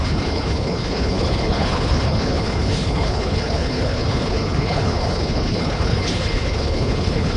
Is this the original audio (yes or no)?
no